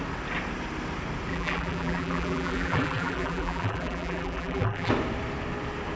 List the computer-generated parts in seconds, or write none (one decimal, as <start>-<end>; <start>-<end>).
1.3-4.9